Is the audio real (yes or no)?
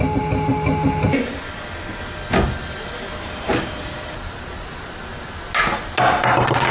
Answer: yes